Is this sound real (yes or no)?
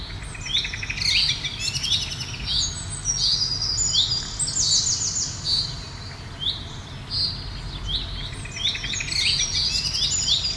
yes